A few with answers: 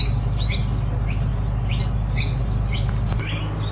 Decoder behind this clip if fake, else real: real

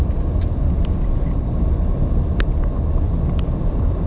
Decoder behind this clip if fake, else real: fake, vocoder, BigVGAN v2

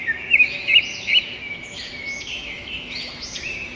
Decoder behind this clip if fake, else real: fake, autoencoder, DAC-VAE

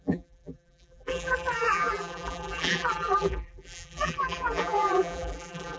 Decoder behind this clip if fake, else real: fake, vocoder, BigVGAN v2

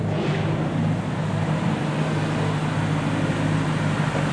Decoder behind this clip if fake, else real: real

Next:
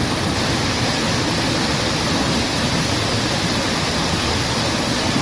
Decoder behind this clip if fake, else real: real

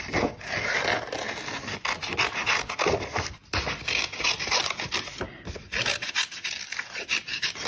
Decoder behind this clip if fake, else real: real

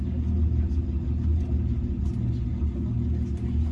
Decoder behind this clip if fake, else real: real